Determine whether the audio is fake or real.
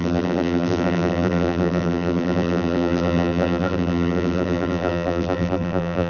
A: fake